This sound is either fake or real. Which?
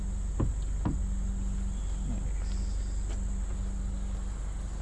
real